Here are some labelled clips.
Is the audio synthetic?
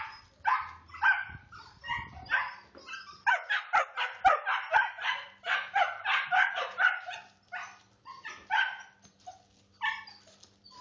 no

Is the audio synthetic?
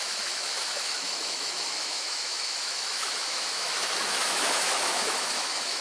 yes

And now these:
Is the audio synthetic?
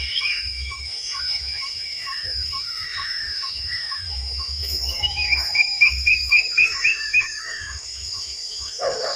yes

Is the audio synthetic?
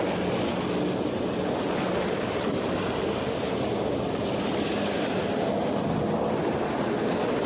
no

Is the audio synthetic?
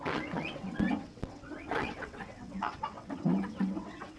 yes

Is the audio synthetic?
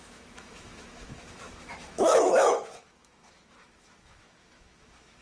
yes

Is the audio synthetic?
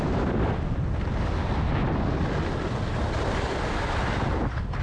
no